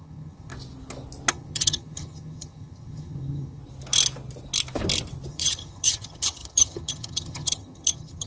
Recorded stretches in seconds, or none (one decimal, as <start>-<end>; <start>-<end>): 0.5-1.3; 3.6-5.3